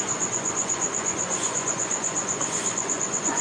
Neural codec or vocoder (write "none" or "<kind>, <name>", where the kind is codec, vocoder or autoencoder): vocoder, Vocos